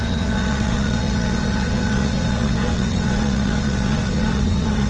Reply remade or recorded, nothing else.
remade